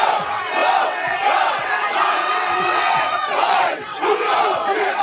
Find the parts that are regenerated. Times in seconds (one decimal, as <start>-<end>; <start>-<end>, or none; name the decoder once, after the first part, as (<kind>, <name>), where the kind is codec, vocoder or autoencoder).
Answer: 0.0-5.0 (vocoder, WaveNeXt)